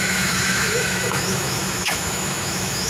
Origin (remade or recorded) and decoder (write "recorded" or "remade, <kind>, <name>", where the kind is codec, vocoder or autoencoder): remade, autoencoder, DAC-VAE